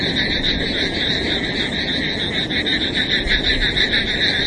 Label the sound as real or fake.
real